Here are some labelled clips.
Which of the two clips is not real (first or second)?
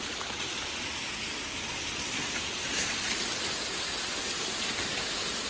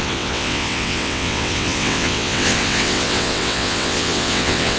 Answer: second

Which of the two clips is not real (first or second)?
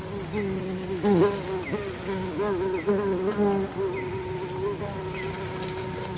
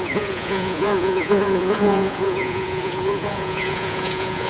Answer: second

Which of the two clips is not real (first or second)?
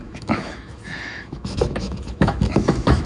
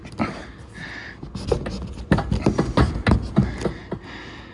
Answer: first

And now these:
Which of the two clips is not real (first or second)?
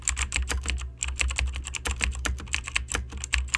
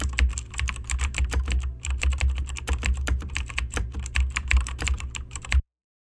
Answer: second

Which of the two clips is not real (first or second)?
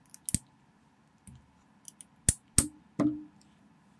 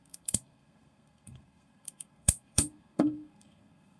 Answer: second